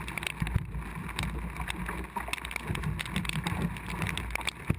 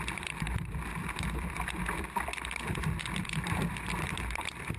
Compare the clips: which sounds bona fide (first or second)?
first